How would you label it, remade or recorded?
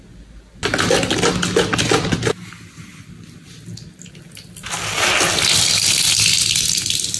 recorded